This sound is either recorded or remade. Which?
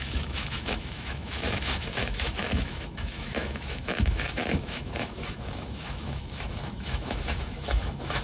remade